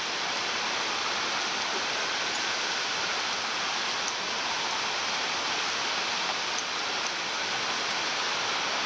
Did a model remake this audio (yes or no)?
no